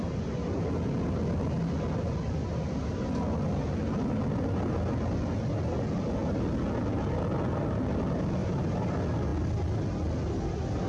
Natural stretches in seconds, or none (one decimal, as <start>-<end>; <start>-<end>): 0.0-8.4; 8.9-10.9